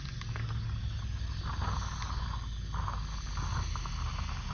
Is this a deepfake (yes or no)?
no